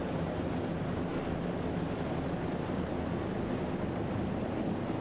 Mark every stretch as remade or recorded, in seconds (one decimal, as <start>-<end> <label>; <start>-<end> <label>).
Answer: 0.0-5.0 recorded